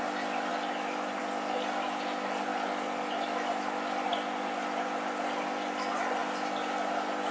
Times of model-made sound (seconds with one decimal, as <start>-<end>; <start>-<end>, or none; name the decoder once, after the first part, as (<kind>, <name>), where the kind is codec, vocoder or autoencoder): none